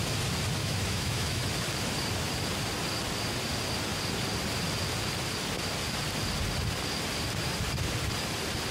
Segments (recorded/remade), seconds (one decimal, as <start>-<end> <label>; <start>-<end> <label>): 0.0-0.6 recorded; 0.6-1.4 remade; 1.4-8.7 recorded